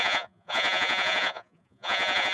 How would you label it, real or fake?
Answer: fake